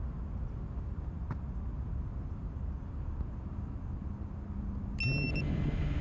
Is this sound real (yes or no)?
yes